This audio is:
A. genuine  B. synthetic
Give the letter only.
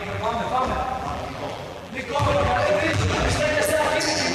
B